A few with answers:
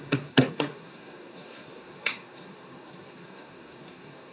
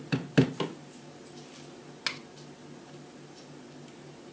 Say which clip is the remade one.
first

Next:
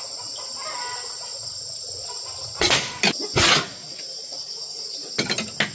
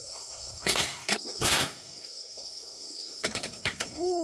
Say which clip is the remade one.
second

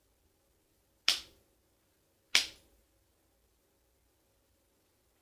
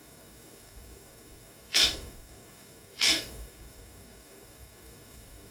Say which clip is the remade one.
second